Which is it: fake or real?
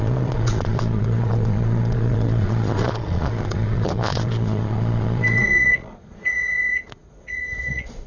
fake